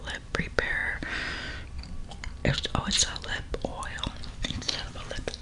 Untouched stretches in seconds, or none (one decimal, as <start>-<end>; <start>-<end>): 0.8-1.8; 2.4-3.2; 3.7-4.3